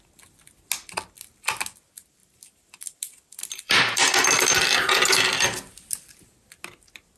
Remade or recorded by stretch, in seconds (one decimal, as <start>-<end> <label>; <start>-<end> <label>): 0.0-2.2 recorded; 2.2-5.1 remade; 5.1-7.2 recorded